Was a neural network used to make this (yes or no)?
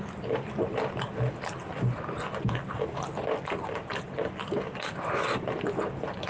no